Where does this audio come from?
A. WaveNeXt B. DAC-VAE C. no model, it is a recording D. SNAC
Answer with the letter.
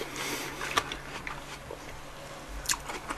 C